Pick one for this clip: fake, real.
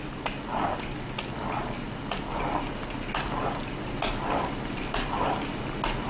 real